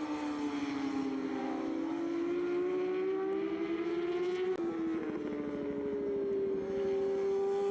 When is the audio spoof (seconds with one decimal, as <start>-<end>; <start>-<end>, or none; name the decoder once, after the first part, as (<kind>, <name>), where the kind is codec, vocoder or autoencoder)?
1.4-1.9 (autoencoder, DAC-VAE)